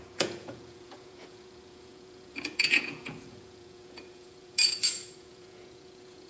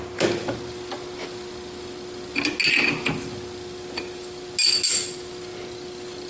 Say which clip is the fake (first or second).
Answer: first